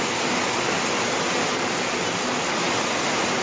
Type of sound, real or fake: real